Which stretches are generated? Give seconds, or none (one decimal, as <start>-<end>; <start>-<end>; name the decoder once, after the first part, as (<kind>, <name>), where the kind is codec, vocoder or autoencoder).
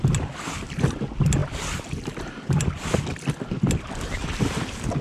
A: none